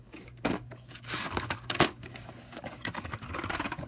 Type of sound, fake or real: fake